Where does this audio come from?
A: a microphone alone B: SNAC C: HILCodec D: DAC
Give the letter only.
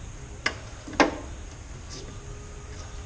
A